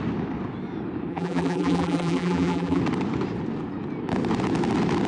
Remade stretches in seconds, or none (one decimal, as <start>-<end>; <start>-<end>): 1.1-2.8